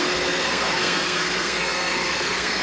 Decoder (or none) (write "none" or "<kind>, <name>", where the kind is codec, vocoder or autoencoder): codec, SNAC